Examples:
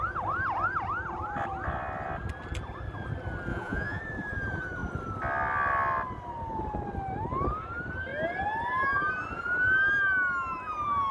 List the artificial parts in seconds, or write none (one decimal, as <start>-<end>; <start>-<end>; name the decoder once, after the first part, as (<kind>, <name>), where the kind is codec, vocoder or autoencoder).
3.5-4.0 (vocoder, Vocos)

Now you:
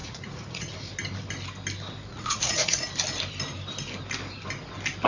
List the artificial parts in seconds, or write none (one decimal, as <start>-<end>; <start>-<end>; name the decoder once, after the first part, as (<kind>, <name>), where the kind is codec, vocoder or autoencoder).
0.0-0.7 (vocoder, Vocos); 2.1-2.8

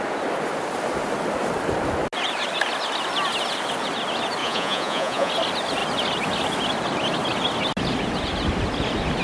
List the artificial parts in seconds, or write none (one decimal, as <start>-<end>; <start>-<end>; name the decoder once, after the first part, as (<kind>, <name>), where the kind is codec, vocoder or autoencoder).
4.4-5.3 (vocoder, Vocos)